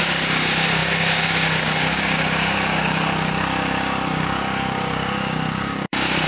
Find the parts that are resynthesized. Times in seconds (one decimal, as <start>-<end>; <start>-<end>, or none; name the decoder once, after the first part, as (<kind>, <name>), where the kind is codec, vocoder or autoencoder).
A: 0.0-6.3 (codec, DAC)